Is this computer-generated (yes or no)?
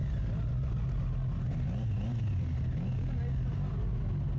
no